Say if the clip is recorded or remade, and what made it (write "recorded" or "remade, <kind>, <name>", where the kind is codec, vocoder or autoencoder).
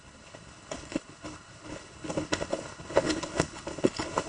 remade, codec, HILCodec